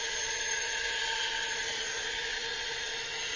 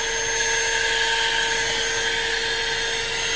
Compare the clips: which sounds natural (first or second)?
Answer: second